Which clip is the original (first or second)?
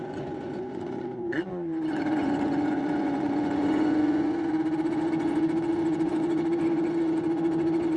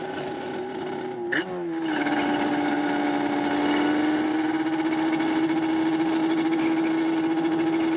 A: second